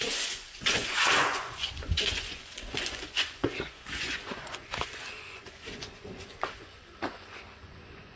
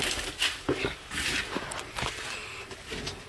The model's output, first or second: first